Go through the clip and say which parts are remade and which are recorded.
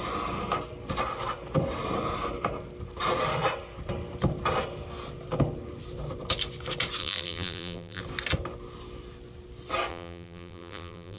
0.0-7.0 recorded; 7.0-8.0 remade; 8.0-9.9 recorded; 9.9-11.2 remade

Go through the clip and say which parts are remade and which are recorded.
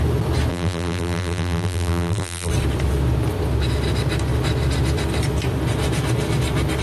0.0-0.5 recorded; 0.5-2.5 remade; 2.5-6.8 recorded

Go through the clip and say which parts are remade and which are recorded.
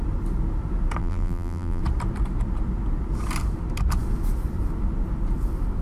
0.0-1.0 recorded; 1.0-1.8 remade; 1.8-5.8 recorded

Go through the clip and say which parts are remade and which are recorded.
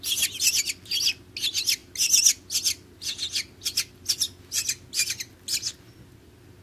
0.0-6.6 recorded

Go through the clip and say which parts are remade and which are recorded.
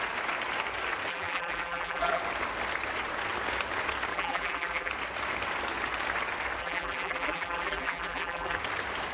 0.0-1.1 recorded; 1.1-2.2 remade; 2.2-4.1 recorded; 4.1-4.9 remade; 4.9-6.6 recorded; 6.6-8.6 remade; 8.6-9.1 recorded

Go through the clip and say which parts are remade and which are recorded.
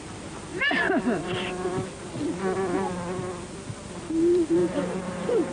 0.0-0.5 recorded; 0.5-1.5 remade; 1.5-4.6 recorded; 4.6-5.5 remade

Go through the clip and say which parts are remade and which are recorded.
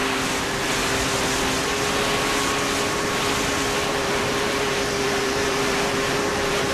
0.0-3.9 recorded; 3.9-6.7 remade